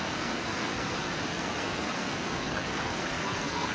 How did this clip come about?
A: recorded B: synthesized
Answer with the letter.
B